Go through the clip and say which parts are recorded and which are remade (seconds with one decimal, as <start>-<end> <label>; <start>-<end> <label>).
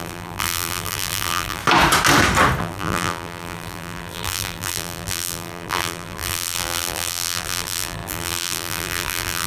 0.0-1.6 remade; 1.6-2.6 recorded; 2.6-9.5 remade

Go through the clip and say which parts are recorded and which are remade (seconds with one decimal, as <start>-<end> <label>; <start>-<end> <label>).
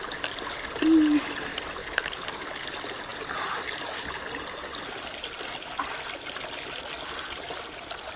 0.0-1.8 recorded; 1.8-2.3 remade; 2.3-8.2 recorded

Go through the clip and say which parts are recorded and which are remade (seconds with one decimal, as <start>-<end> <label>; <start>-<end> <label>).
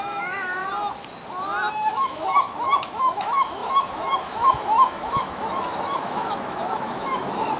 0.0-0.6 remade; 0.6-1.7 recorded; 1.7-7.6 remade